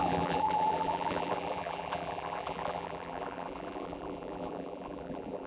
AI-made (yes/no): yes